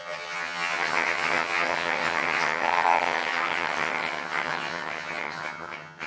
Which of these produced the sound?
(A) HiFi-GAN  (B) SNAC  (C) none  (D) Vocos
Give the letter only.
A